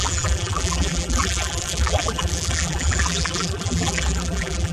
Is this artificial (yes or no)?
yes